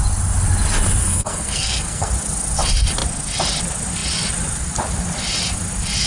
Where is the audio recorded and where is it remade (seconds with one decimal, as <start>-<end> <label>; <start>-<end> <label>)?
0.0-1.0 recorded; 1.0-2.1 remade; 2.1-6.1 recorded